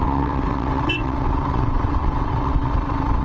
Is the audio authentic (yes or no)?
no